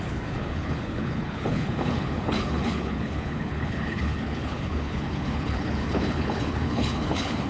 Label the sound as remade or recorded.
remade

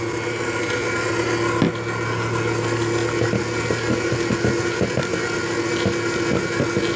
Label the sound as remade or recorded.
recorded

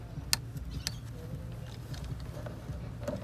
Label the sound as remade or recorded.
recorded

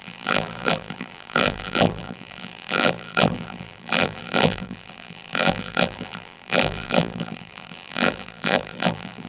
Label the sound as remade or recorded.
remade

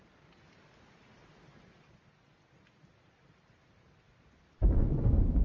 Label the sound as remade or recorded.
recorded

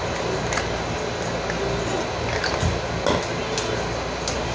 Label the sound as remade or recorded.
recorded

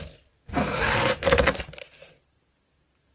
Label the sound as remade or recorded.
recorded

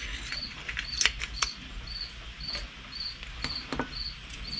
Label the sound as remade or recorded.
recorded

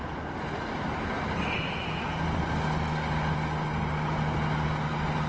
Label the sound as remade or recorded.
recorded